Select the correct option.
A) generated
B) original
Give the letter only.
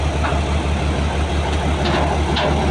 B